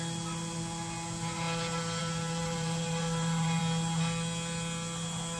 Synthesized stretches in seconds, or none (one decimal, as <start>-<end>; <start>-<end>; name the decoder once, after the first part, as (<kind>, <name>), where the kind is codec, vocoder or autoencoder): 2.0-3.6 (vocoder, BigVGAN v2)